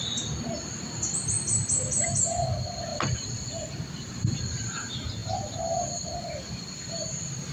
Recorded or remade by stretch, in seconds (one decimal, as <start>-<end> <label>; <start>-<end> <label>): 0.0-2.9 recorded; 2.9-4.4 remade; 4.4-7.5 recorded